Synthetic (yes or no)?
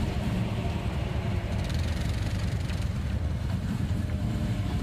yes